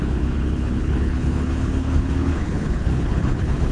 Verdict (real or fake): fake